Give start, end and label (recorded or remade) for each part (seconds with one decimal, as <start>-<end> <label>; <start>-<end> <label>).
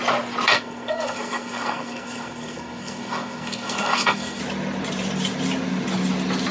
0.0-0.5 recorded; 0.5-4.4 remade; 4.4-6.5 recorded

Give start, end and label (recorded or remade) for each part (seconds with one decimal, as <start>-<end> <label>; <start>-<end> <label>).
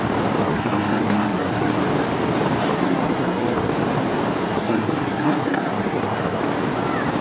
0.0-0.4 recorded; 0.4-1.8 remade; 1.8-2.6 recorded; 2.6-3.7 remade; 3.7-4.4 recorded; 4.4-6.4 remade; 6.4-7.2 recorded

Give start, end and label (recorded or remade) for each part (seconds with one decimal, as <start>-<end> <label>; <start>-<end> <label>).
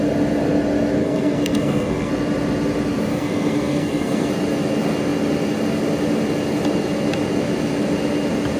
0.0-1.0 recorded; 1.0-2.1 remade; 2.1-3.1 recorded; 3.1-4.3 remade; 4.3-8.6 recorded